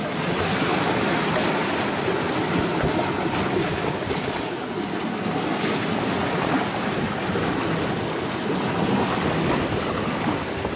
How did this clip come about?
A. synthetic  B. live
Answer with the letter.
B